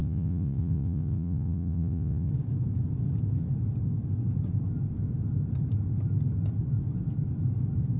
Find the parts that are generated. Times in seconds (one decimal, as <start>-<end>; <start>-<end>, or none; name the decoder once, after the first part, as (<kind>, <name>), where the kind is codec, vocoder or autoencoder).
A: 0.0-2.3 (vocoder, Vocos)